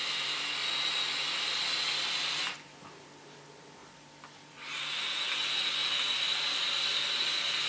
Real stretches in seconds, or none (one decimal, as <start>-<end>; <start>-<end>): 0.0-3.8; 5.0-7.7